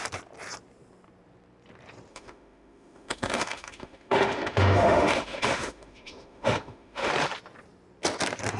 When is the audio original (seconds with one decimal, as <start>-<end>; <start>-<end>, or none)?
0.0-2.1; 7.1-8.6